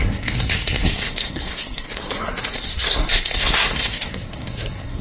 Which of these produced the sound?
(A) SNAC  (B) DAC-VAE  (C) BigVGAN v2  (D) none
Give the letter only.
A